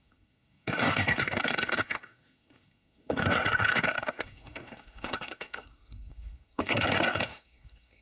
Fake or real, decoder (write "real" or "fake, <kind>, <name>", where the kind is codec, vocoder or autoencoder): fake, codec, SNAC